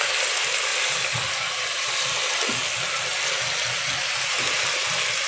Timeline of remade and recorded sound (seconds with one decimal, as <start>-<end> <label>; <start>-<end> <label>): 0.0-5.3 recorded